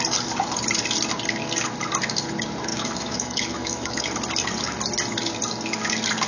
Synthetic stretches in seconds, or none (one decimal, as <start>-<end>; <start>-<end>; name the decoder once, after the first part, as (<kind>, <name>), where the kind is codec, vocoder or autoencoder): 2.7-4.0 (autoencoder, DAC-VAE)